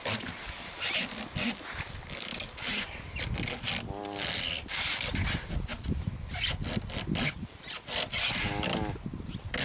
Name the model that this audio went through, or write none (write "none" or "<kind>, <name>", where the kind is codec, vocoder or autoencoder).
none